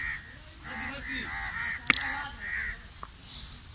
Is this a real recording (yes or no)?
yes